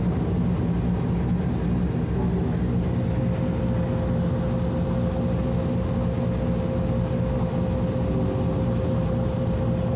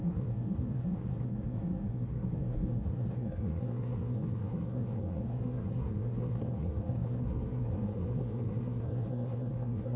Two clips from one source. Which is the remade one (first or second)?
second